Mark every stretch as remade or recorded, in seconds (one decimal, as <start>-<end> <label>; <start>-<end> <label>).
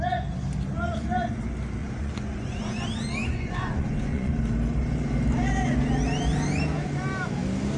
0.0-1.8 recorded; 1.8-2.7 remade; 2.7-3.2 recorded; 3.2-4.3 remade; 4.3-7.8 recorded